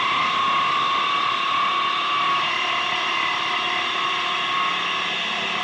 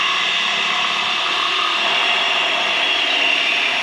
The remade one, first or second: second